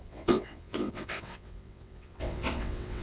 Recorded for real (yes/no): no